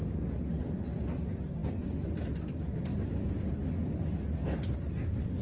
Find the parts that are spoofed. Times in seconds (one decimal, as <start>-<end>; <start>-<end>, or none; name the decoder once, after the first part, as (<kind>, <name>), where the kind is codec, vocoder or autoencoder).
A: none